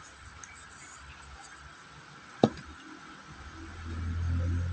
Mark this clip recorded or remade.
recorded